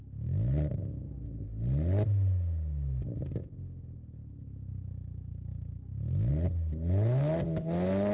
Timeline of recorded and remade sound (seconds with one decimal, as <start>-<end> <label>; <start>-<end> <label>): 0.0-8.1 recorded